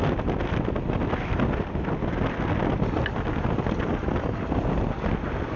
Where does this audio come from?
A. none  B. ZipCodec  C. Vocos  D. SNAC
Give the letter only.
A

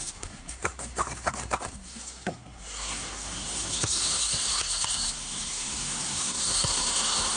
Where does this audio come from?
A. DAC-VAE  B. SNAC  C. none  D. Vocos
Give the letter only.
B